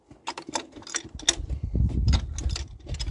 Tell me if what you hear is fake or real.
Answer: real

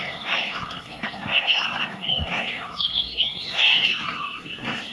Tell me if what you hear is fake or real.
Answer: fake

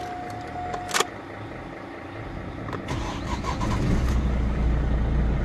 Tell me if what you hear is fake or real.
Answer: real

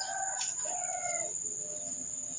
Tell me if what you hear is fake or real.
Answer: real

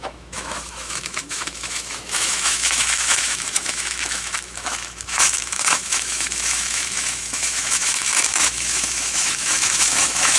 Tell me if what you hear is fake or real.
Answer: fake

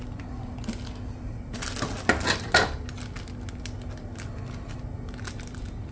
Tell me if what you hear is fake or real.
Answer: real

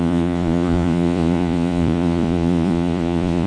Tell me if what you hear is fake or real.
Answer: fake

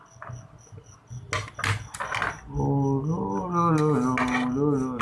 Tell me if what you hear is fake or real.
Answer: real